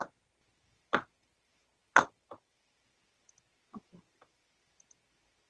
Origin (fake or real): real